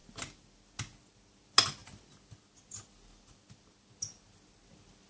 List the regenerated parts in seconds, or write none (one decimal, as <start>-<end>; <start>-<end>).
none